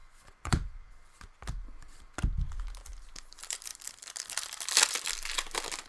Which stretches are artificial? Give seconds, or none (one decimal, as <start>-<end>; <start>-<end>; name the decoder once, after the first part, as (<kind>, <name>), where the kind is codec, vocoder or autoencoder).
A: 0.0-0.9 (vocoder, Vocos)